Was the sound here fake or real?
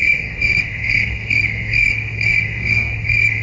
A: fake